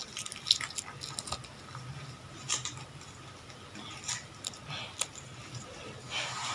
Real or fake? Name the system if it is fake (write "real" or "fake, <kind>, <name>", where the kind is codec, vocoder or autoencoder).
real